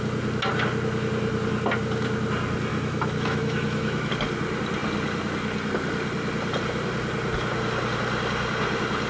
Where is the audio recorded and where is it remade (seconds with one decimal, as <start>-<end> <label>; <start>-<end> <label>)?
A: 0.0-2.7 recorded; 2.7-4.1 remade; 4.1-9.1 recorded